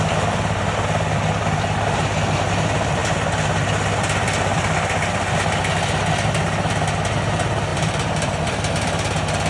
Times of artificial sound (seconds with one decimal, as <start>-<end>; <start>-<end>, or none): none